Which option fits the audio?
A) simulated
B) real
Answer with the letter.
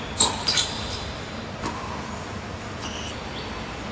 B